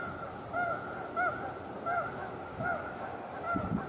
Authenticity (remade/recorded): recorded